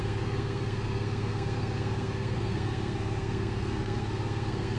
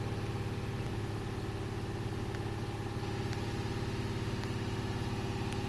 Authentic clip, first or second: second